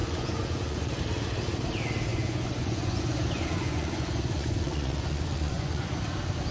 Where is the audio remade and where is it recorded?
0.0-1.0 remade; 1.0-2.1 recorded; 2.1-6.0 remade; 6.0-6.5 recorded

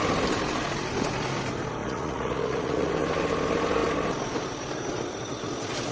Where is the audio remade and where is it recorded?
0.0-1.8 recorded; 1.8-2.9 remade; 2.9-5.9 recorded